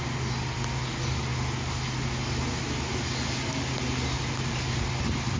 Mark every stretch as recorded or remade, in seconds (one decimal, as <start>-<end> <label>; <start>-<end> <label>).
0.0-5.4 recorded